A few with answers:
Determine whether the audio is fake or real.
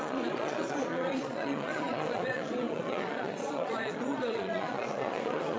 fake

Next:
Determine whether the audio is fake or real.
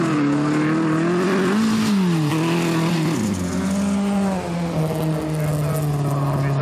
real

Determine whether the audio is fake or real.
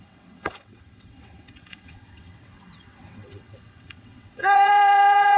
fake